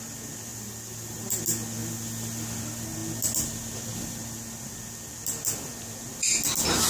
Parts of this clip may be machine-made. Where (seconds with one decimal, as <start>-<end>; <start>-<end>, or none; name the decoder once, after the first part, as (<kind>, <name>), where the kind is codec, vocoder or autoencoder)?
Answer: 0.5-1.4 (vocoder, BigVGAN v2); 1.8-2.6